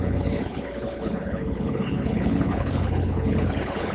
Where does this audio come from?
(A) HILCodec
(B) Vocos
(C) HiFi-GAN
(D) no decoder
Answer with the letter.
A